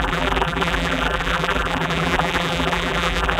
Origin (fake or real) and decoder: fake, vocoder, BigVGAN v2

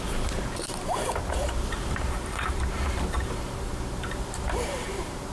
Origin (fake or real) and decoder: fake, vocoder, BigVGAN v2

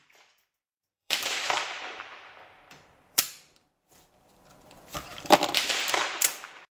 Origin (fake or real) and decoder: fake, vocoder, BigVGAN v2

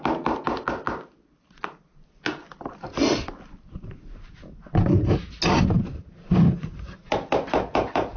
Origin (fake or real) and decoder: real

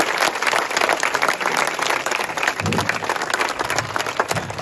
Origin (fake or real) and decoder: real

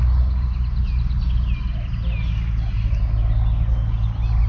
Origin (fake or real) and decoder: real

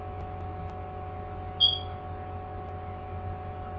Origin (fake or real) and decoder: real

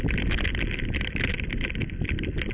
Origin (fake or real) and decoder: real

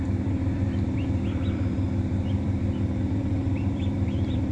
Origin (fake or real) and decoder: fake, vocoder, BigVGAN v2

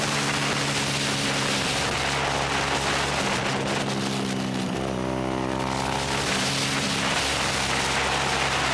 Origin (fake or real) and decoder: real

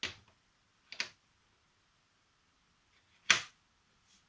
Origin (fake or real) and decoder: real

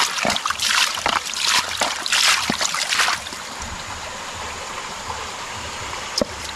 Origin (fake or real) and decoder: fake, vocoder, BigVGAN v2